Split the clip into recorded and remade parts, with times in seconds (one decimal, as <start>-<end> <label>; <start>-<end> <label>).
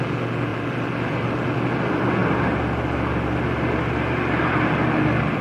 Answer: 0.0-0.5 recorded; 0.5-1.7 remade; 1.7-5.4 recorded